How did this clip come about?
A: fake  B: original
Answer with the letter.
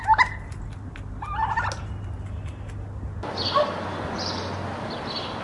B